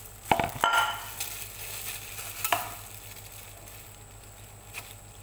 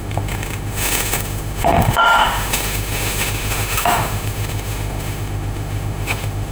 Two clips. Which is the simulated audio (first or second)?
second